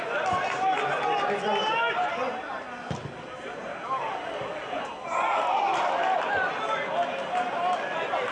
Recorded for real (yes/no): yes